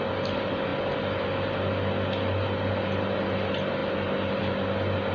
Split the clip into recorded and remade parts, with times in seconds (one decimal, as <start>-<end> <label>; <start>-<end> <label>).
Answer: 0.0-5.1 recorded